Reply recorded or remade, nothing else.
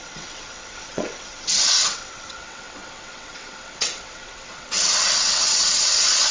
remade